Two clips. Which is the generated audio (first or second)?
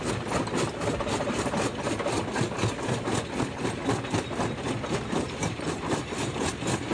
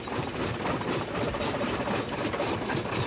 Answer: second